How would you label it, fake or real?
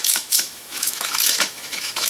fake